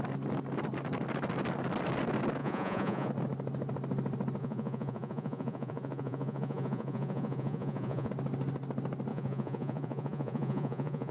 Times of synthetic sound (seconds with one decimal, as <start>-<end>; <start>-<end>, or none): 2.4-3.1; 4.4-8.1; 9.1-11.1

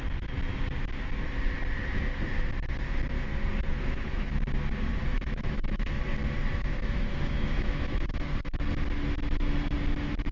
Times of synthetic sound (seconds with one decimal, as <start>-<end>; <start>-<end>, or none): 3.7-4.4; 4.9-6.0; 6.5-8.1

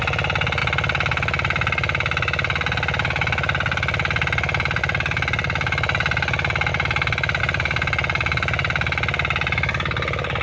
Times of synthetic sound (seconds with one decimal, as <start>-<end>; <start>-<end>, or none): none

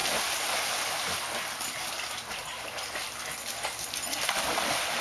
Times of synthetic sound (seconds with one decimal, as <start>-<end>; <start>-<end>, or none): none